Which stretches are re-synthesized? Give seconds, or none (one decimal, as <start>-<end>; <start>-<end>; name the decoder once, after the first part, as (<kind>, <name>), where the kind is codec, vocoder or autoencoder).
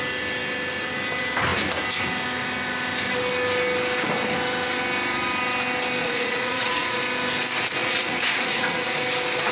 6.0-7.0 (vocoder, Vocos); 7.8-9.0